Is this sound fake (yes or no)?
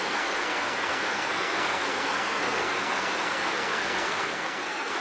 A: yes